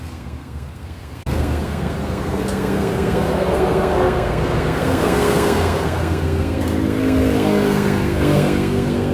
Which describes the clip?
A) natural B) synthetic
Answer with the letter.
B